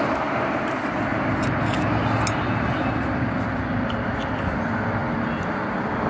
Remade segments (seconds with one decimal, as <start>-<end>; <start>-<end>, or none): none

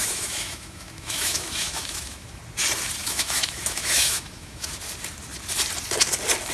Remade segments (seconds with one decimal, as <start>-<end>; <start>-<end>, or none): 0.0-2.4; 3.0-4.7

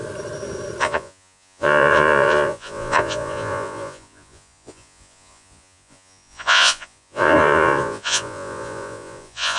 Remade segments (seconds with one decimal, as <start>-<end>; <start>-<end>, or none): 0.8-9.6

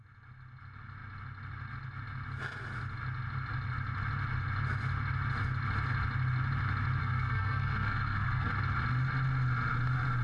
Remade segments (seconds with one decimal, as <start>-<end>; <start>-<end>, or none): 7.0-8.5

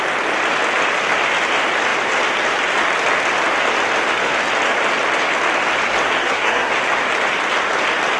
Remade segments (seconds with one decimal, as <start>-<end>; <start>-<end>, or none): 6.2-6.7

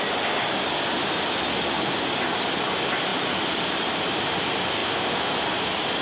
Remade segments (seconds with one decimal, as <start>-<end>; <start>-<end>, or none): 3.1-4.0